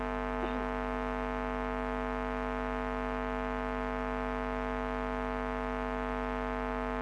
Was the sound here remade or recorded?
recorded